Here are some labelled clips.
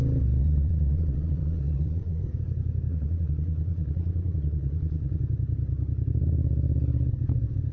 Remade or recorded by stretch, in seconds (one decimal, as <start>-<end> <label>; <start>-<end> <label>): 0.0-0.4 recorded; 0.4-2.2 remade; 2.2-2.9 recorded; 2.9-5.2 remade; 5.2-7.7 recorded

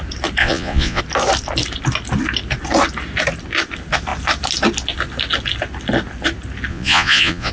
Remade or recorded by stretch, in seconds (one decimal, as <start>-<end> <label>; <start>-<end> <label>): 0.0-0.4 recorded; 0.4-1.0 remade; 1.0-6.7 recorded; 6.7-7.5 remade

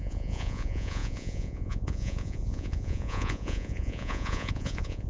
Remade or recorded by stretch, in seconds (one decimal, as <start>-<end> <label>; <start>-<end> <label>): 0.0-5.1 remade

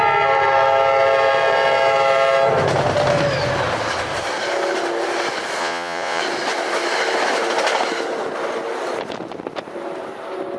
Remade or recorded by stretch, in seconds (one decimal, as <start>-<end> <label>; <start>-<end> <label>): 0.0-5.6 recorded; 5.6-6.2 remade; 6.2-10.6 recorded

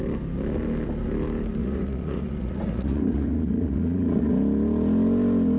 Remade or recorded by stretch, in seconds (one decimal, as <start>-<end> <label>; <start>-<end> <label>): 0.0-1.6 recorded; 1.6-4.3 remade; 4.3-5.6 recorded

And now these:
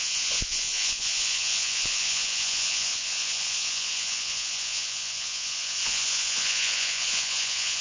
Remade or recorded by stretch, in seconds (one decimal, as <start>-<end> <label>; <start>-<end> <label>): 0.0-7.8 remade

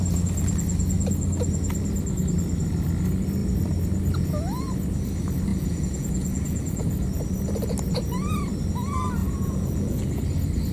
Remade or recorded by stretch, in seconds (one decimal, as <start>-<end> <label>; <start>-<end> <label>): 0.0-5.5 recorded; 5.5-7.2 remade; 7.2-9.2 recorded; 9.2-10.2 remade; 10.2-10.7 recorded